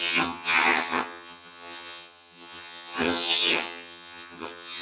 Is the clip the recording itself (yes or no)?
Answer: no